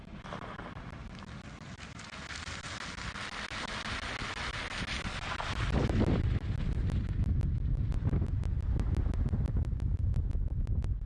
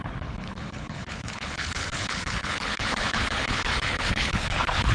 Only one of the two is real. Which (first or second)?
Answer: first